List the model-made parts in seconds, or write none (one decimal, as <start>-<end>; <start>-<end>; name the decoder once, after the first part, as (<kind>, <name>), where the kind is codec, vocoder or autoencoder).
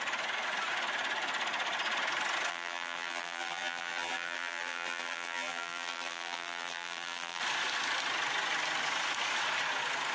2.5-7.4 (vocoder, BigVGAN v2)